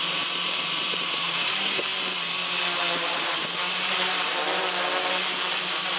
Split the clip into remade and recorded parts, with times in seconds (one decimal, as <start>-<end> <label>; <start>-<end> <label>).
0.0-1.9 remade; 1.9-3.1 recorded; 3.1-4.3 remade; 4.3-5.1 recorded; 5.1-6.0 remade